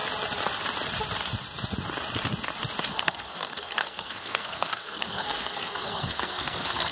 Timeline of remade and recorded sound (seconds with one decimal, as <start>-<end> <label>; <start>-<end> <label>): 0.0-2.9 recorded; 2.9-6.9 remade